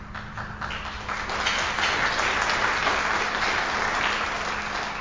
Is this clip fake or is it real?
real